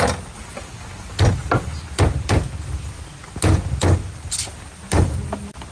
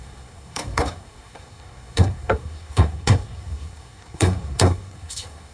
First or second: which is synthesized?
second